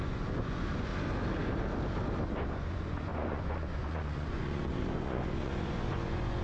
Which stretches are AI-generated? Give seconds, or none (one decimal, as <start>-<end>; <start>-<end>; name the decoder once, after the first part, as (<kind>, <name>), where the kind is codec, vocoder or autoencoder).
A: 0.0-0.9 (vocoder, Vocos); 2.4-6.4